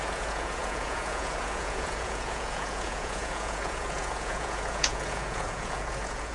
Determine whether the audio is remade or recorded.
remade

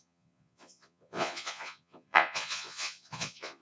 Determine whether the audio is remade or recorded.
remade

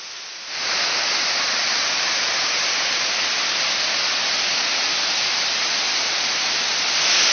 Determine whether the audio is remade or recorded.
recorded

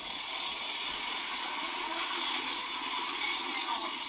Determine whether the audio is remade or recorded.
remade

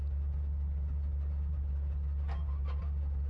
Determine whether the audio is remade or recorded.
recorded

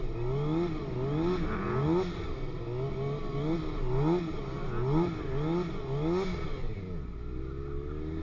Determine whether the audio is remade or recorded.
recorded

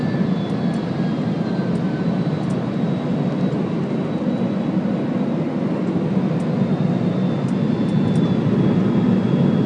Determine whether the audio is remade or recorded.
recorded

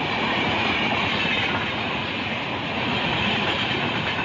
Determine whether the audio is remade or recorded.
remade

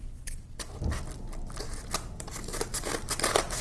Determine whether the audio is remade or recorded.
recorded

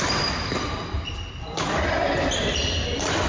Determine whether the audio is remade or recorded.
recorded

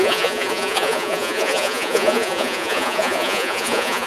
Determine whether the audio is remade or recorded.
remade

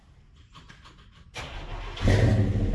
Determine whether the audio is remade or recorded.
recorded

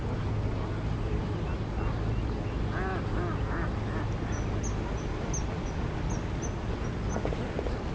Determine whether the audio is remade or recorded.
recorded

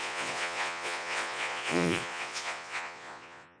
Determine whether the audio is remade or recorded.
remade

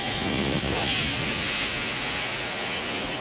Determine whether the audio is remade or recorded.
remade